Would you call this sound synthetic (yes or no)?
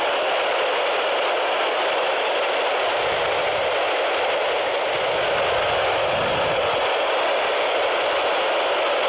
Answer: no